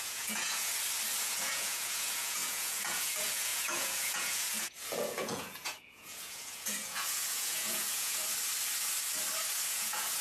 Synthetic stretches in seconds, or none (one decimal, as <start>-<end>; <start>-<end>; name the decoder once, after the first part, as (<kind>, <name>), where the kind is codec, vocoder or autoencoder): 0.0-0.7 (vocoder, Vocos); 1.2-8.2; 9.7-10.2